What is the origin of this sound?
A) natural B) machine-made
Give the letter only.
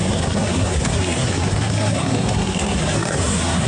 B